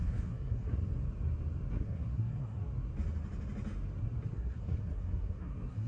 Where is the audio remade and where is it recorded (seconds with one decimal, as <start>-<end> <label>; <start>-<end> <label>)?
0.0-0.9 remade; 0.9-1.7 recorded; 1.7-2.6 remade; 2.6-4.3 recorded; 4.3-5.9 remade